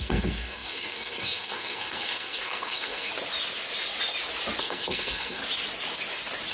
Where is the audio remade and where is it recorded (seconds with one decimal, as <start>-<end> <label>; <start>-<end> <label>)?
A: 0.0-3.1 remade; 3.1-4.6 recorded; 4.6-5.4 remade; 5.4-6.5 recorded